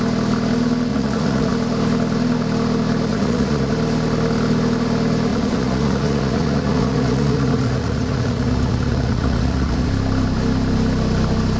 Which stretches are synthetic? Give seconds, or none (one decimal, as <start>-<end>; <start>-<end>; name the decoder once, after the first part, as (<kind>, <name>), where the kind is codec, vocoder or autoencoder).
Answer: 0.9-1.5 (vocoder, Vocos); 3.1-3.7; 5.3-9.9